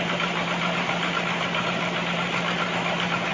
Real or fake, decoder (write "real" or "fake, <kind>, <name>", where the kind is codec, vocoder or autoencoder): real